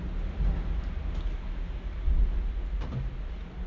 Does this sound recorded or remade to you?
recorded